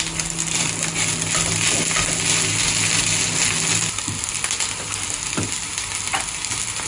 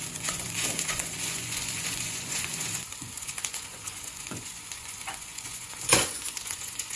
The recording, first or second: first